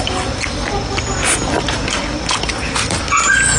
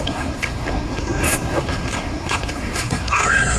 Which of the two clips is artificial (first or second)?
second